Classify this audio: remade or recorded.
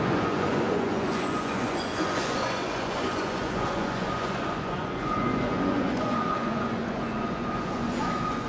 remade